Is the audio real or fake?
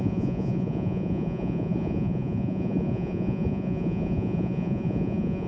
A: fake